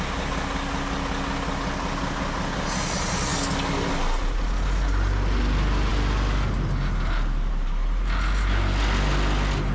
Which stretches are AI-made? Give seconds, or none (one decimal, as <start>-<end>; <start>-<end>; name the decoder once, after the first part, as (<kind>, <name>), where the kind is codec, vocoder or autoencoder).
none